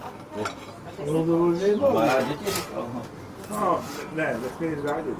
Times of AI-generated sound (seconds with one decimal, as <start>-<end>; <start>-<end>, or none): none